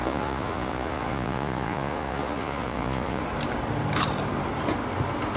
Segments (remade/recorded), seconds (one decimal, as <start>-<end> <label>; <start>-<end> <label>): 0.0-3.2 remade; 3.2-5.4 recorded